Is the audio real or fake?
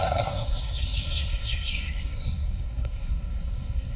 fake